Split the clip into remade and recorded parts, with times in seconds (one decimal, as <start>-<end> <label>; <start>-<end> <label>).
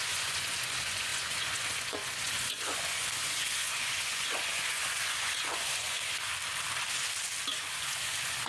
0.0-6.3 remade; 6.3-7.6 recorded; 7.6-8.5 remade